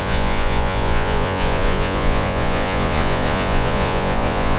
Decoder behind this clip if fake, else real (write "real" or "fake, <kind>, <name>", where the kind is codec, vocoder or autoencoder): fake, vocoder, Vocos